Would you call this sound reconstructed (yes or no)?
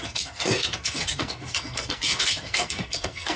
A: yes